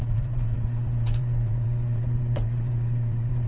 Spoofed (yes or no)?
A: yes